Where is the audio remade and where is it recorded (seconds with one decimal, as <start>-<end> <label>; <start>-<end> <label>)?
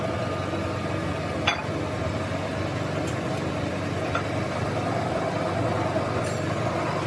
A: 0.0-1.6 recorded; 1.6-5.6 remade; 5.6-7.1 recorded